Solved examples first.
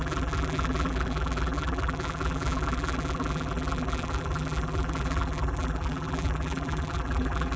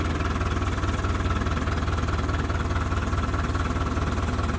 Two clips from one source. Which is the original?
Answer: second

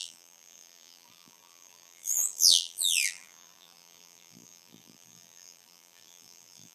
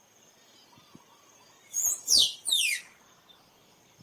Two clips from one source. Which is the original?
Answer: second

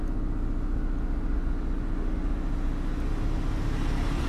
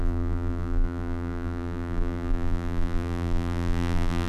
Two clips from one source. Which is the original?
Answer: first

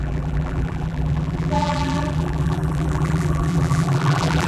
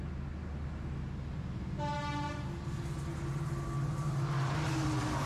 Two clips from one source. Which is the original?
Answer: second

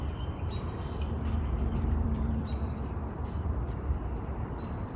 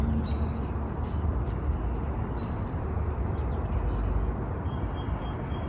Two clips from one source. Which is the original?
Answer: second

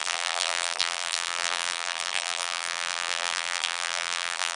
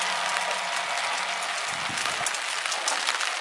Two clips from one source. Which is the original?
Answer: second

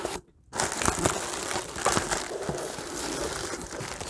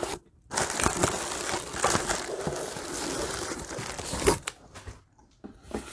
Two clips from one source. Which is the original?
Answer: first